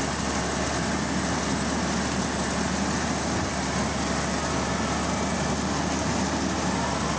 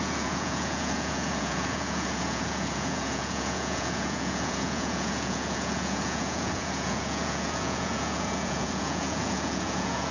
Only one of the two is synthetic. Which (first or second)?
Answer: second